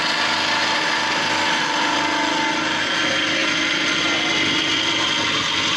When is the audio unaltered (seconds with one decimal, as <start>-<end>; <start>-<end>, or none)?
0.0-5.8